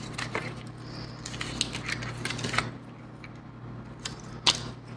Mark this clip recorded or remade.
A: recorded